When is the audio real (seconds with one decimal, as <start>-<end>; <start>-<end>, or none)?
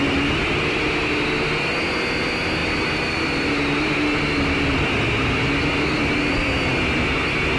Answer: 0.0-7.6